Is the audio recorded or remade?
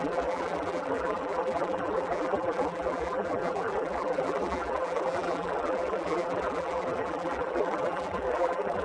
remade